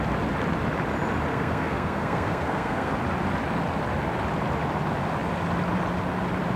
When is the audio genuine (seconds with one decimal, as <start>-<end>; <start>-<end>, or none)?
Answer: 0.0-1.3; 2.9-6.6